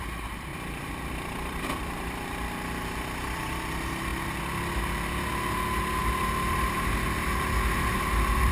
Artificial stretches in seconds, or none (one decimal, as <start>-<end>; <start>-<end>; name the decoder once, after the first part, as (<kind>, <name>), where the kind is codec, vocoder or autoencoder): 0.5-3.6 (vocoder, BigVGAN v2); 6.0-6.9